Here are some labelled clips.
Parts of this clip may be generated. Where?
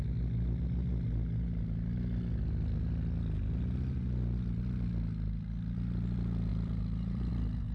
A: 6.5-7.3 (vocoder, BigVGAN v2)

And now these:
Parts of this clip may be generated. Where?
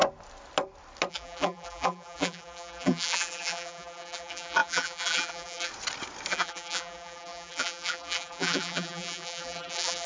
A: 1.1-5.7 (vocoder, BigVGAN v2); 6.3-10.1